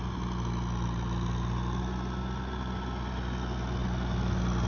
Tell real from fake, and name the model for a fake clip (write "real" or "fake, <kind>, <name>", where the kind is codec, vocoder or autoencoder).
real